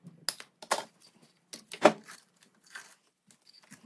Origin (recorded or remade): recorded